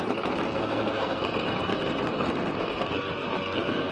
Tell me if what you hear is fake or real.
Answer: fake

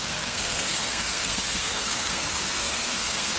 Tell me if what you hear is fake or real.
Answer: fake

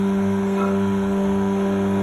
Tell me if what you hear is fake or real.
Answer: fake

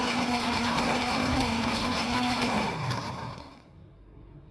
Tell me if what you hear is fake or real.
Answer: fake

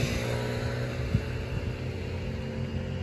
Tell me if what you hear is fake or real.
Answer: real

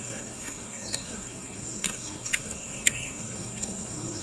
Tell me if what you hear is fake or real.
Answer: fake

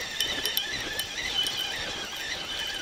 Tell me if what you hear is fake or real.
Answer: real